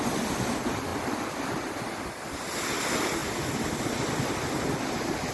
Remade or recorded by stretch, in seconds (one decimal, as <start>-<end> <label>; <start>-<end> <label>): 0.0-5.3 recorded